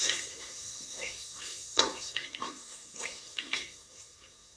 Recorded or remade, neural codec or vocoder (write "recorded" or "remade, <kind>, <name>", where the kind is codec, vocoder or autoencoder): remade, codec, SNAC